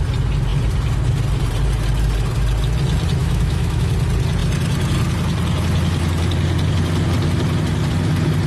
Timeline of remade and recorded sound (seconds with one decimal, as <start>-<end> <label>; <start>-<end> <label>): 0.0-3.2 recorded; 3.2-3.9 remade; 3.9-8.5 recorded